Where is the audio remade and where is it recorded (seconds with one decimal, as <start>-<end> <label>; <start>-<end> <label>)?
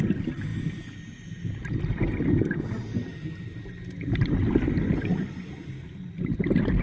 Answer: 0.0-6.8 recorded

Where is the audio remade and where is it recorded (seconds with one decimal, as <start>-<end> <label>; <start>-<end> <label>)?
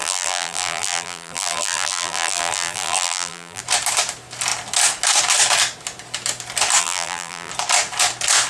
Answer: 0.0-3.6 remade; 3.6-6.8 recorded; 6.8-7.5 remade; 7.5-8.5 recorded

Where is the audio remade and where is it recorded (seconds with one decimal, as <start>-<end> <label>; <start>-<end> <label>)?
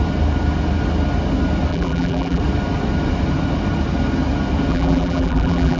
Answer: 0.0-1.7 recorded; 1.7-2.4 remade; 2.4-4.7 recorded; 4.7-5.8 remade